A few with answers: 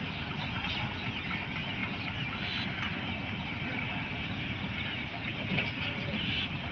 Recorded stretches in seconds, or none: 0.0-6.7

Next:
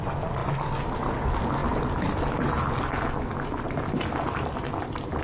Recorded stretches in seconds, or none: 0.0-5.2

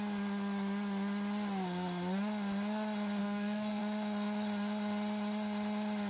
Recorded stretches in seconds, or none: 0.0-3.2; 3.8-6.1